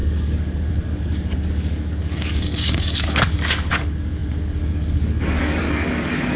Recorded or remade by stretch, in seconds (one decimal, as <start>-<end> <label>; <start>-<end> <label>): 0.0-6.4 remade